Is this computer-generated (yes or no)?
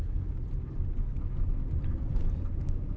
no